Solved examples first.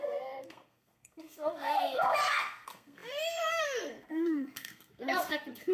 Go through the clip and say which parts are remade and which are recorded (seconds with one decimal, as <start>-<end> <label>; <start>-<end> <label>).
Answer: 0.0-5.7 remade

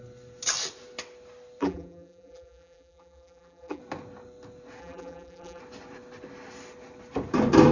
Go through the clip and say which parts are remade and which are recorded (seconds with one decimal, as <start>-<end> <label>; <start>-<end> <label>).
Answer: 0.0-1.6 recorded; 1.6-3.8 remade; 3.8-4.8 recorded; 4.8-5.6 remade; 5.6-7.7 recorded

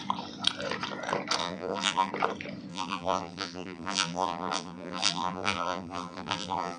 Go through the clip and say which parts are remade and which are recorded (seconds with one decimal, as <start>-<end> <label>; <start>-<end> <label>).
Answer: 0.0-1.4 recorded; 1.4-2.1 remade; 2.1-2.7 recorded; 2.7-6.8 remade

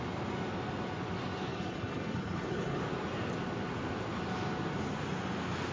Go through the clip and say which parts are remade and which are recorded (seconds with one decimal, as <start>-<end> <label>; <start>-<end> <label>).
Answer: 0.0-1.5 recorded; 1.5-2.8 remade; 2.8-5.7 recorded

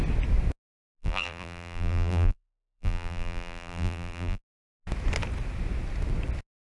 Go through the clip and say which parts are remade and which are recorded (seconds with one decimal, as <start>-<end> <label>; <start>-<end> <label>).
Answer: 0.0-1.0 recorded; 1.0-4.4 remade; 4.4-6.6 recorded

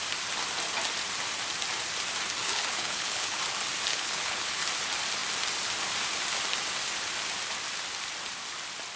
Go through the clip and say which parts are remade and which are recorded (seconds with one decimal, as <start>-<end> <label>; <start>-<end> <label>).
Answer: 0.0-2.4 recorded; 2.4-3.4 remade; 3.4-3.9 recorded; 3.9-4.6 remade; 4.6-9.0 recorded